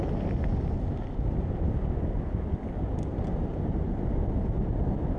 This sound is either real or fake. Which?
real